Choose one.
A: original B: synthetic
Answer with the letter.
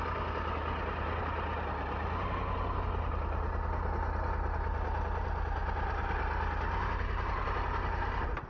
A